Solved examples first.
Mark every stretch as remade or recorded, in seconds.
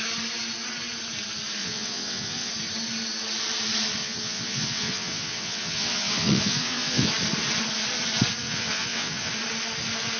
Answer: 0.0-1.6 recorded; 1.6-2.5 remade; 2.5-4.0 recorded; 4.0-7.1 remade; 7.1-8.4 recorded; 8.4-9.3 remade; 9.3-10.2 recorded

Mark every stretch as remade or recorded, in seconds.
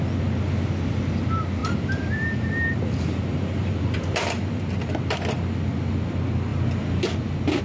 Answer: 0.0-1.6 recorded; 1.6-4.9 remade; 4.9-7.6 recorded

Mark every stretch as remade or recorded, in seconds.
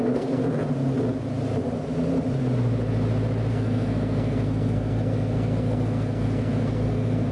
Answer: 0.0-0.4 remade; 0.4-3.5 recorded; 3.5-7.3 remade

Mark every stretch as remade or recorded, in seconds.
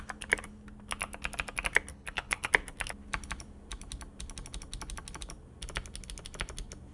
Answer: 0.0-1.9 recorded; 1.9-2.5 remade; 2.5-6.9 recorded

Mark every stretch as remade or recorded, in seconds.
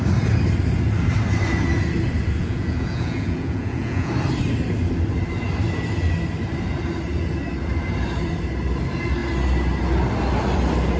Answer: 0.0-2.4 recorded; 2.4-4.1 remade; 4.1-11.0 recorded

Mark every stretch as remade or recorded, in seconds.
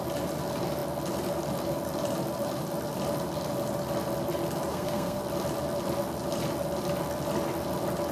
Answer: 0.0-4.7 recorded; 4.7-5.2 remade; 5.2-8.1 recorded